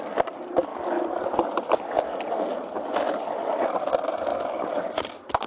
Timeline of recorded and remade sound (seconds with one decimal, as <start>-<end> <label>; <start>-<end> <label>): 0.0-5.5 recorded